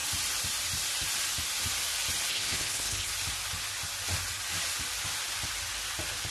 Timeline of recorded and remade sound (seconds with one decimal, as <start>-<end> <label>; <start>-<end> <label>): 0.0-2.3 recorded; 2.3-3.1 remade; 3.1-6.3 recorded